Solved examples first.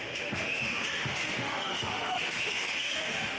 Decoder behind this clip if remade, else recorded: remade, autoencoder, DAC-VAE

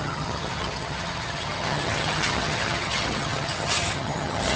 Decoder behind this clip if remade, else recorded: remade, vocoder, HiFi-GAN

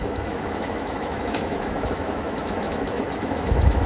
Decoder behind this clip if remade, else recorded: remade, autoencoder, DAC-VAE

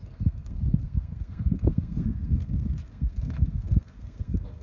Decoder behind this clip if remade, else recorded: remade, codec, SNAC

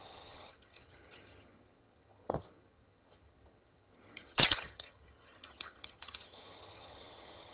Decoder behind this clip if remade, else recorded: remade, vocoder, HiFi-GAN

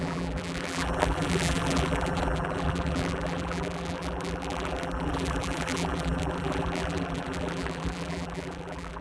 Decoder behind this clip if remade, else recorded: remade, vocoder, BigVGAN v2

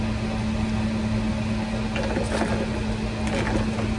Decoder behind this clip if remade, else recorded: recorded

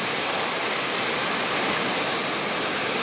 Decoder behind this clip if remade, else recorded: recorded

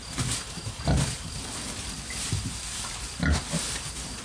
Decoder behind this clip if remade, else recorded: recorded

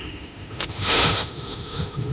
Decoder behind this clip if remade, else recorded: remade, autoencoder, DAC-VAE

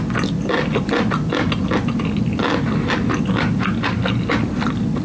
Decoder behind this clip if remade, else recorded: recorded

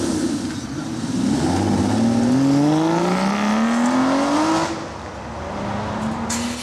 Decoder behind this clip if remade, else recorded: recorded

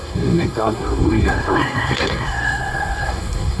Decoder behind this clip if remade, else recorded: remade, codec, SNAC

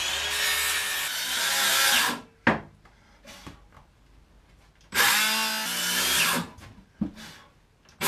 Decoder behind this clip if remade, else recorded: recorded